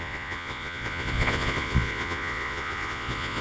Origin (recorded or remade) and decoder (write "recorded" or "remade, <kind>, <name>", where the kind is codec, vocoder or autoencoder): remade, vocoder, Vocos